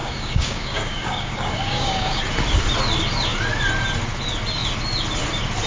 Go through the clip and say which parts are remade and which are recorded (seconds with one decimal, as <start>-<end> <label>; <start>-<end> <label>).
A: 0.0-2.2 remade; 2.2-5.7 recorded